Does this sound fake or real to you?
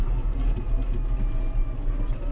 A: real